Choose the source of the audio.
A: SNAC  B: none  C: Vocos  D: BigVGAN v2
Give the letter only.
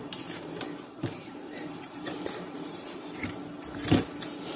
D